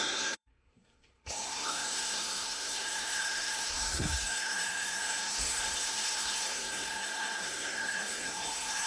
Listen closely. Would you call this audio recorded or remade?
remade